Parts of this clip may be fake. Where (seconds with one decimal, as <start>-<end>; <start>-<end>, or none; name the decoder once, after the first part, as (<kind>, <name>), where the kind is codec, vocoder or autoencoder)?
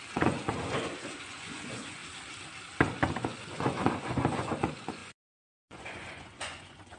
0.0-2.0 (vocoder, Vocos); 3.1-7.0